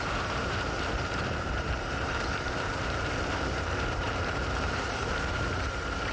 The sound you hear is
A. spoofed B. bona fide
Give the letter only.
A